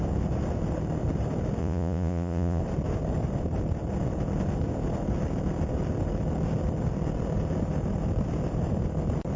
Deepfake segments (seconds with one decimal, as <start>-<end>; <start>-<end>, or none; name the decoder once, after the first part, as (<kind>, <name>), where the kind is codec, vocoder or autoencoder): 1.6-2.6 (vocoder, Vocos)